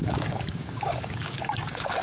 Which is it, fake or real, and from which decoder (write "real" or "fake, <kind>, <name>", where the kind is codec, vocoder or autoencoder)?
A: fake, codec, DAC